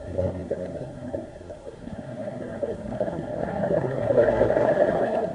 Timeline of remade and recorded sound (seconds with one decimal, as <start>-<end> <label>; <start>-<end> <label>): 0.0-5.3 remade